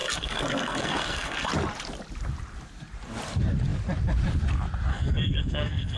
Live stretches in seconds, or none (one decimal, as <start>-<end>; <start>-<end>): 1.5-4.9